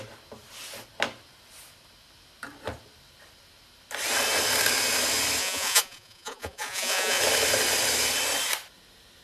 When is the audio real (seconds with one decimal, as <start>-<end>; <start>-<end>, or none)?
0.0-5.4; 7.2-9.2